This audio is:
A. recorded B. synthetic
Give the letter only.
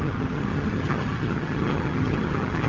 B